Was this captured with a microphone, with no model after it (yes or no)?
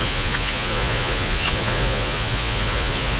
no